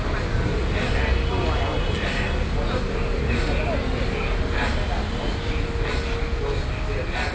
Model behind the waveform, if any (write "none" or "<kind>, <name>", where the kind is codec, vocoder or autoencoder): none